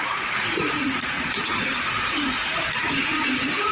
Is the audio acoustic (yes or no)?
no